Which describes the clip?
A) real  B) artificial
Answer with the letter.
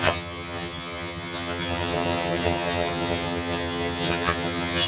B